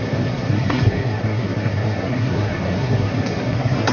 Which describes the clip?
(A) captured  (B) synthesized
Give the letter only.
B